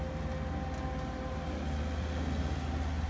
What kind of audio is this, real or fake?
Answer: real